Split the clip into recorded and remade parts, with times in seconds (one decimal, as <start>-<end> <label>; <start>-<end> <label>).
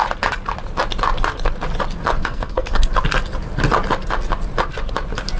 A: 0.0-2.2 recorded; 2.2-2.9 remade; 2.9-5.4 recorded